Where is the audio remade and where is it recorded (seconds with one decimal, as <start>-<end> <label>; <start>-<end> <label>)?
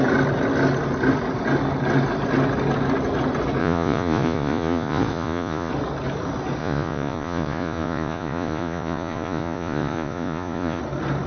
0.0-3.6 recorded; 3.6-5.7 remade; 5.7-6.6 recorded; 6.6-10.8 remade; 10.8-11.3 recorded